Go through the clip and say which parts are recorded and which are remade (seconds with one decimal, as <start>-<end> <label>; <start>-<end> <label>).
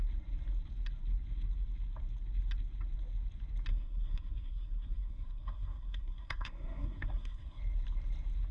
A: 0.0-3.7 recorded; 3.7-7.6 remade; 7.6-8.5 recorded